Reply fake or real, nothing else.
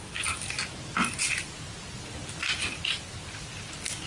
real